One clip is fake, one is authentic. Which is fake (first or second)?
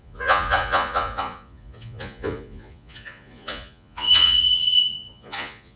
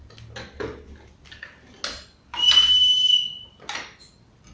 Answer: first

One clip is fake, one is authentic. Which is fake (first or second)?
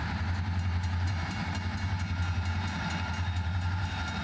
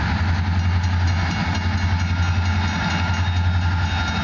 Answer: first